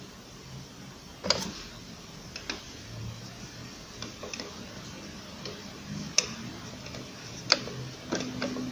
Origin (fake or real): real